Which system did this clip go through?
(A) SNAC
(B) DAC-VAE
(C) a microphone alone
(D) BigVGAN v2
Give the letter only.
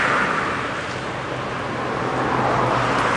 C